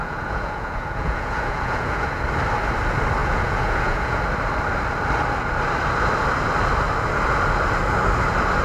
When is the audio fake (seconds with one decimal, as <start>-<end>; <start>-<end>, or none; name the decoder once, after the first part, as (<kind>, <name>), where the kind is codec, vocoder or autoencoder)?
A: 0.0-2.2 (vocoder, Vocos); 3.2-4.2